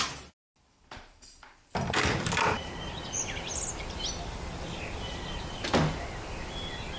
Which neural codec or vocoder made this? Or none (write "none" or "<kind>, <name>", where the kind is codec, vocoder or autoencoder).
none